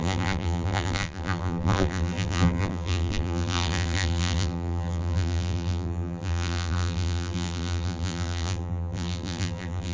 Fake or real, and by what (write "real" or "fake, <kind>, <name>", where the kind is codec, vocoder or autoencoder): fake, vocoder, BigVGAN v2